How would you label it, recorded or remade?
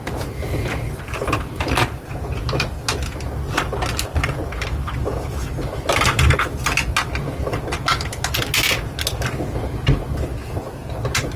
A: recorded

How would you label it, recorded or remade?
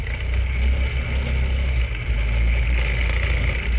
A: recorded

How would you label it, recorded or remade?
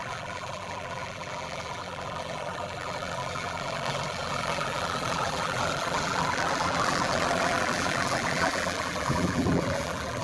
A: remade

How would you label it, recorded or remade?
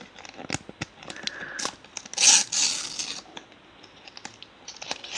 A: recorded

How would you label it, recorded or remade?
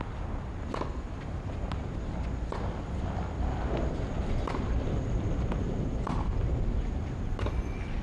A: recorded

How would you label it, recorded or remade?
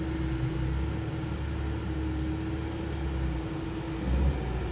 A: recorded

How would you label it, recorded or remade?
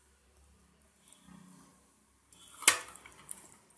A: recorded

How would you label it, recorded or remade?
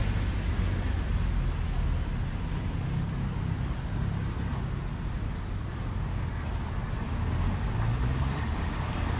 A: recorded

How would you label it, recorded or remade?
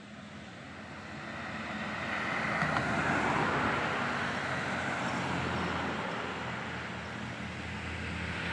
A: recorded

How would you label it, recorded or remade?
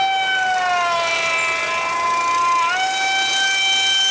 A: recorded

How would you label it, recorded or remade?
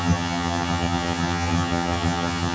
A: remade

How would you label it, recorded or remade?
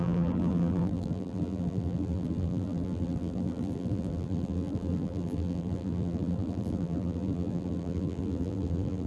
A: remade